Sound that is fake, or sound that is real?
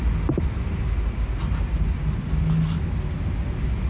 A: real